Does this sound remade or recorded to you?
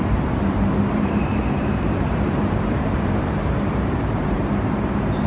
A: remade